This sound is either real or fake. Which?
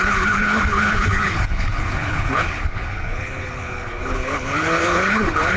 fake